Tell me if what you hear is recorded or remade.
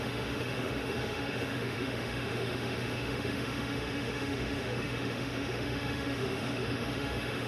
remade